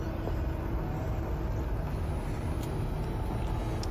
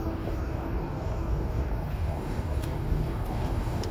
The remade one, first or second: second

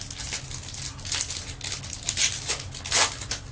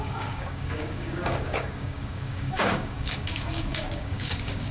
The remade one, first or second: second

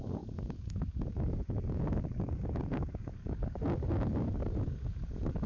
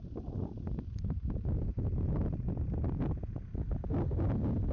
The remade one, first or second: first